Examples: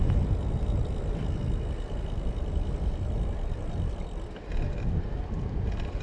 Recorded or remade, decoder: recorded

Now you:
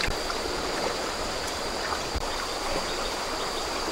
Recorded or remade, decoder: remade, vocoder, BigVGAN v2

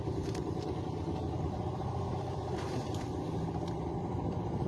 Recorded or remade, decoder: remade, vocoder, BigVGAN v2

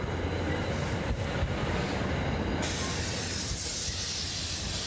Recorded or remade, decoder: recorded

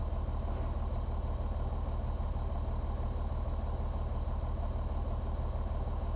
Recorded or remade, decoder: recorded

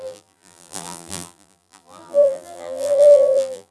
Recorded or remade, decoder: remade, vocoder, BigVGAN v2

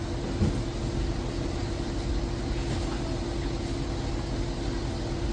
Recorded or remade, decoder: recorded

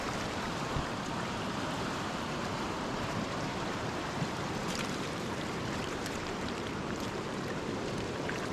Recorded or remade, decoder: remade, vocoder, BigVGAN v2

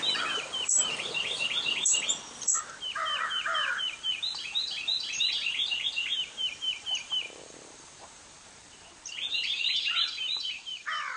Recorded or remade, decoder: remade, vocoder, BigVGAN v2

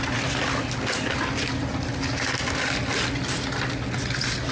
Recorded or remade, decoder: recorded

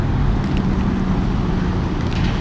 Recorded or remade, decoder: recorded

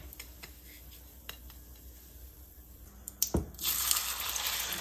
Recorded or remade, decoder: recorded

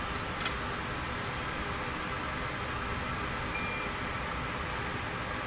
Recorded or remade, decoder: recorded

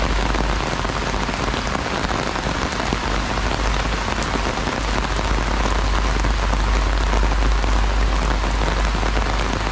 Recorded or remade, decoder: recorded